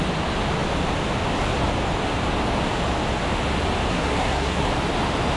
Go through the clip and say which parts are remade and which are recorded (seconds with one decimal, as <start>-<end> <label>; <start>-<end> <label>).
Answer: 0.0-3.9 recorded; 3.9-4.7 remade; 4.7-5.4 recorded